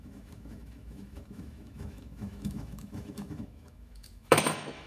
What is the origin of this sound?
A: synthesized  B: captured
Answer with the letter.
A